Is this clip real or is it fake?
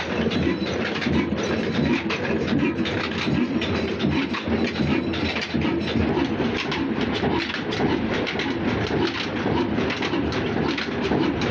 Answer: real